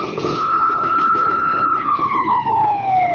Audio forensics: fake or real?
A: fake